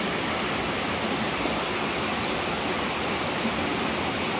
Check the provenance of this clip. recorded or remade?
recorded